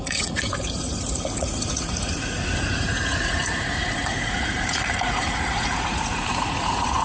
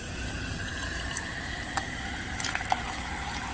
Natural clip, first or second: second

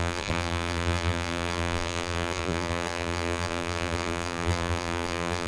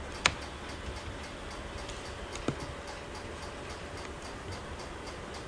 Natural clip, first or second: second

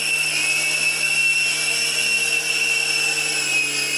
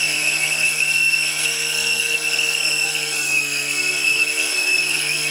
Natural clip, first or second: first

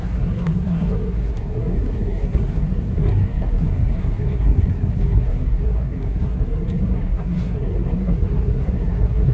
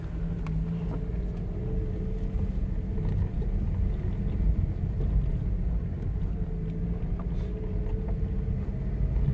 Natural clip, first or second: second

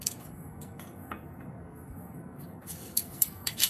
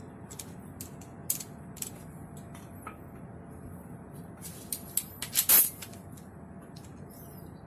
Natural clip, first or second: second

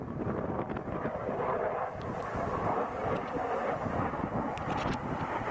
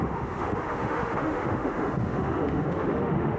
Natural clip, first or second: first